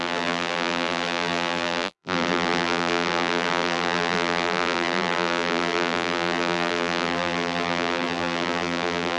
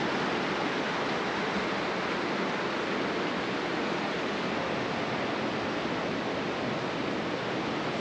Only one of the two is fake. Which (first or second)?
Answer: first